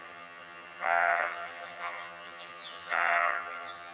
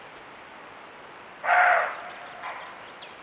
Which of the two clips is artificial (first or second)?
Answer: first